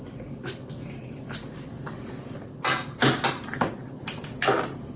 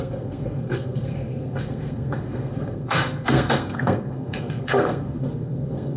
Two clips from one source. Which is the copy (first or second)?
second